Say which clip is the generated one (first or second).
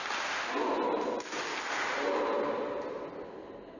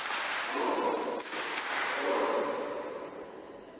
second